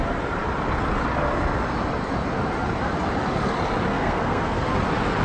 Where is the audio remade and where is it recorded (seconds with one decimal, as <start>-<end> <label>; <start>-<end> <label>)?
0.0-3.9 recorded; 3.9-4.7 remade; 4.7-5.2 recorded